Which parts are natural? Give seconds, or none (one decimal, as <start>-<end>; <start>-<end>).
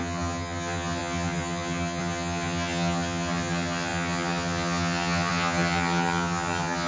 none